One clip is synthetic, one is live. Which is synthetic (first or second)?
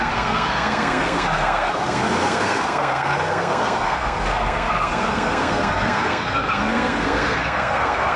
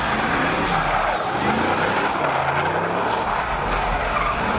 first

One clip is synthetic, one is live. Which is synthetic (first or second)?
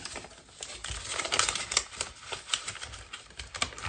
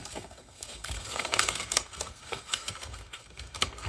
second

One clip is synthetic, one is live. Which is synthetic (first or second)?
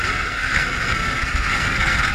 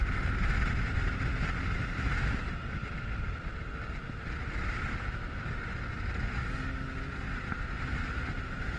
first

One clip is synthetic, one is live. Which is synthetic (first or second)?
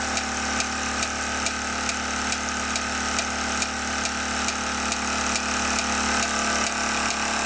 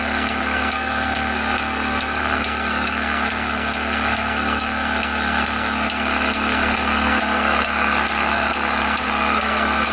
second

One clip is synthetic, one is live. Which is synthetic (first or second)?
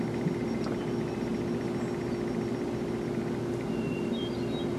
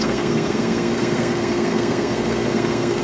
second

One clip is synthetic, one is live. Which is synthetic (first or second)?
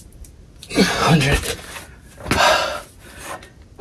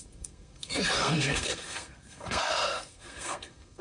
second